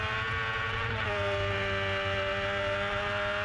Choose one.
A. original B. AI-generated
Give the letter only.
A